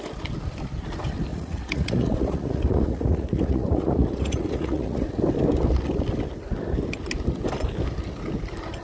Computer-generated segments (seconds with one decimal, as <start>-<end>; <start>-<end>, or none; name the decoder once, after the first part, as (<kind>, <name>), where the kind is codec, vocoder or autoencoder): 1.3-5.2 (vocoder, Vocos)